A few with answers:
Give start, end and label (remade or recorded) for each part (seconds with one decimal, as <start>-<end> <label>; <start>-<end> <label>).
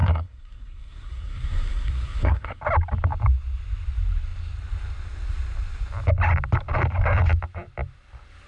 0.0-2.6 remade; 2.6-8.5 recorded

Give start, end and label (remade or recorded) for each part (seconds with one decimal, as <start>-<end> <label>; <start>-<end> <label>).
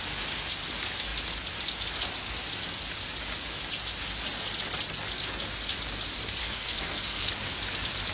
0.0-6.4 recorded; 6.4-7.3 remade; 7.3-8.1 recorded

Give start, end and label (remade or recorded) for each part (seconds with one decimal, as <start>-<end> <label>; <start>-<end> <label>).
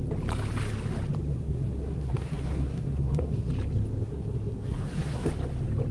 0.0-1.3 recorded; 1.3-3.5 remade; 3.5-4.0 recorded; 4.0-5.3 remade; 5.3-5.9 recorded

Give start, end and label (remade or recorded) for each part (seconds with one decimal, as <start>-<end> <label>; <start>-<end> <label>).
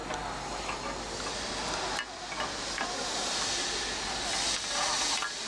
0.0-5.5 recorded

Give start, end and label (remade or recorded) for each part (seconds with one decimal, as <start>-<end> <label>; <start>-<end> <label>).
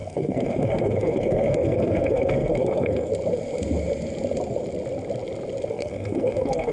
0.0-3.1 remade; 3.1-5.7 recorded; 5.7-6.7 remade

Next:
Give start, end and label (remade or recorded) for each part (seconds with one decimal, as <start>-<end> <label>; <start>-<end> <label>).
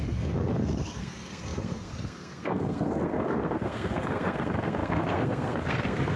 0.0-6.2 remade